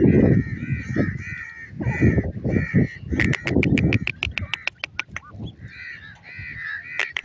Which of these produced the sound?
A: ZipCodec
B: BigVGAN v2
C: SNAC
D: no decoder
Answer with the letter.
D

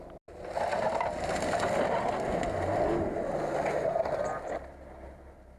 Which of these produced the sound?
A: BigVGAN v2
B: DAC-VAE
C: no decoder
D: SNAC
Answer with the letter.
C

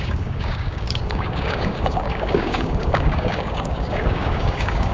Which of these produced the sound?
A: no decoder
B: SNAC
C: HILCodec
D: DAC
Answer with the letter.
D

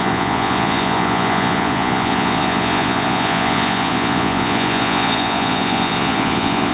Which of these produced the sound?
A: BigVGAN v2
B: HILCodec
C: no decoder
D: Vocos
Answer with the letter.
D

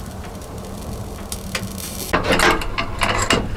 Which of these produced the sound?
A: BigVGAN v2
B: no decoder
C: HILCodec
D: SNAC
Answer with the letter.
B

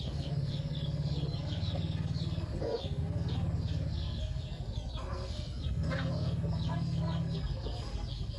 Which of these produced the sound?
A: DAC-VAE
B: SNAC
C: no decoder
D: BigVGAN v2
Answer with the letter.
B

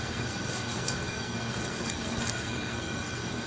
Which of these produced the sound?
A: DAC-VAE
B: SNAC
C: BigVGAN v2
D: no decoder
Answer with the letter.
B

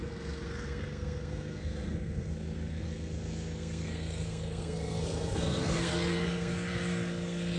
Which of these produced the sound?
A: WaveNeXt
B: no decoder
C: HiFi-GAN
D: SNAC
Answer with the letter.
D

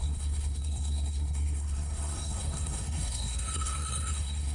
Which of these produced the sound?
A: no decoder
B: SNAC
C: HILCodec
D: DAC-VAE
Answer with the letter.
B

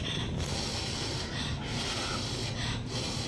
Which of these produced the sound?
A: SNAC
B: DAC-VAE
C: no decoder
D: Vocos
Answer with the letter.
C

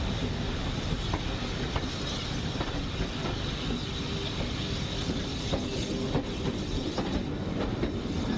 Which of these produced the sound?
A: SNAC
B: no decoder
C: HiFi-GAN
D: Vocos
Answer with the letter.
B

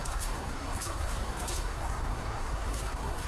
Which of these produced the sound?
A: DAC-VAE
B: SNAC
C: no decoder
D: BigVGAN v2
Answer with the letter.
B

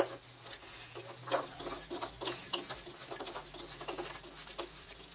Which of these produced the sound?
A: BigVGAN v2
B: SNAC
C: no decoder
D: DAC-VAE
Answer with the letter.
C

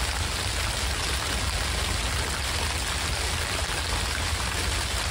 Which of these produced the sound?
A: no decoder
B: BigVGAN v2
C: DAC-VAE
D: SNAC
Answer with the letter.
A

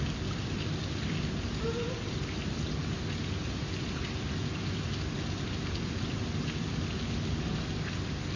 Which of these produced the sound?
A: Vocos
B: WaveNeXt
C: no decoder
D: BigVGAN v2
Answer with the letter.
C